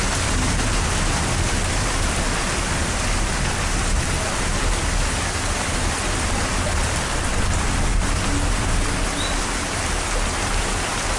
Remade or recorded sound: recorded